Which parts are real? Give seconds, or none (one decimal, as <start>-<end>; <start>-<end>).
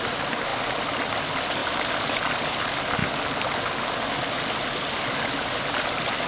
0.0-6.3